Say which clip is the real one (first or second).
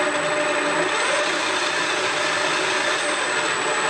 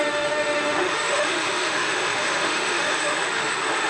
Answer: first